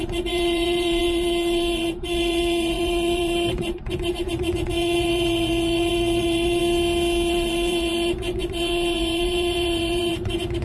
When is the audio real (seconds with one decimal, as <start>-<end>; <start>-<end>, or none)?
6.6-7.3